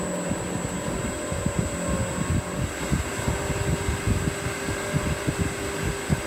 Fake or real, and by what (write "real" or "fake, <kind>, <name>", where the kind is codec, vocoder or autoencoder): real